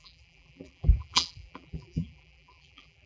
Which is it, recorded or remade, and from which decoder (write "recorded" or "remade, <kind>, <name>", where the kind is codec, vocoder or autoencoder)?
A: remade, vocoder, BigVGAN v2